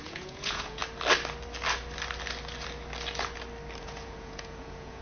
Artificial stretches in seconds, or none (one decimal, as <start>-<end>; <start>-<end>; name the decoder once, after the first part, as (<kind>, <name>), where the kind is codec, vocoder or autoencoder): 0.0-0.8 (vocoder, Vocos); 3.8-5.0